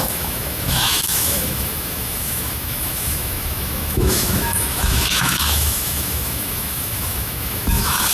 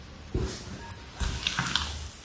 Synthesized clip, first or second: first